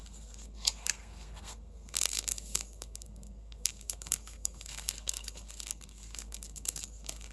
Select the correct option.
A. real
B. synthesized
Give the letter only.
B